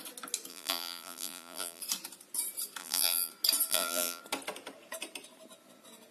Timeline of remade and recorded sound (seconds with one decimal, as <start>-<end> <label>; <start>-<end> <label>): 0.0-0.5 recorded; 0.5-1.8 remade; 1.8-2.8 recorded; 2.8-3.3 remade; 3.3-3.7 recorded; 3.7-4.2 remade; 4.2-6.1 recorded